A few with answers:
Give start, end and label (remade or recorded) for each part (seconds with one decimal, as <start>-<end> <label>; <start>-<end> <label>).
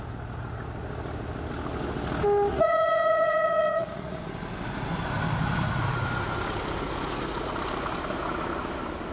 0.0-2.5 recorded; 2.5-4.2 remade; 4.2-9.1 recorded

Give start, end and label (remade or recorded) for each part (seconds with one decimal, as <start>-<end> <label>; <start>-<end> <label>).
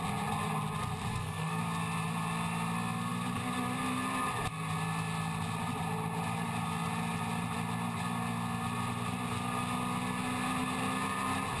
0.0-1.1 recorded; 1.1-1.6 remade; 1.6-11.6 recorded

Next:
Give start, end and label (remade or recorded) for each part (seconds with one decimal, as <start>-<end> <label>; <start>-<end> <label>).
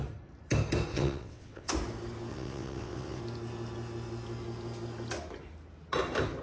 0.0-0.9 recorded; 0.9-1.7 remade; 1.7-2.3 recorded; 2.3-3.2 remade; 3.2-6.4 recorded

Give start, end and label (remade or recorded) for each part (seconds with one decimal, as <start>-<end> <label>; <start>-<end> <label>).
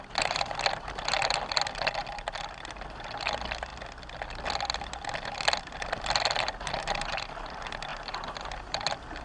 0.0-9.2 recorded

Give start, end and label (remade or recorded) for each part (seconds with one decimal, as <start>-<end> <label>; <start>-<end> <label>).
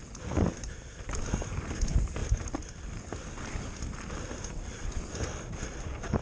0.0-6.2 recorded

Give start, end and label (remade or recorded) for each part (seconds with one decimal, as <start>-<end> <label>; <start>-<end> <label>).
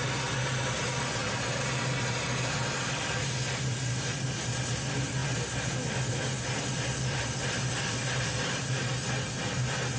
0.0-10.0 recorded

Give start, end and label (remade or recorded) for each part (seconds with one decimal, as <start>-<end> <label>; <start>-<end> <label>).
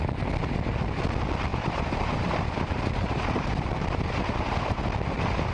0.0-1.5 recorded; 1.5-4.8 remade; 4.8-5.5 recorded